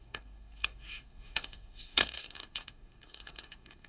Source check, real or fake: fake